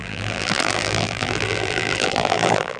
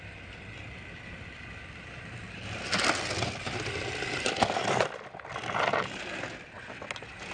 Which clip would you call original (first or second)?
second